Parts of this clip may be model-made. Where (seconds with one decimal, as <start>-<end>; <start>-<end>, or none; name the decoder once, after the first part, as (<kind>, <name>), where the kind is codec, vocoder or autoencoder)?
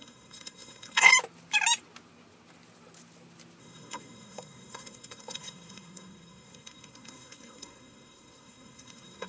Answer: 0.0-1.1 (codec, SNAC); 3.6-9.3